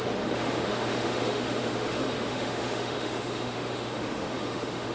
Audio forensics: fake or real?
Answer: fake